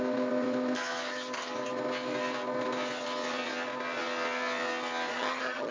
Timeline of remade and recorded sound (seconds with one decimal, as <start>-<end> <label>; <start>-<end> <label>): 0.0-5.1 recorded; 5.1-5.7 remade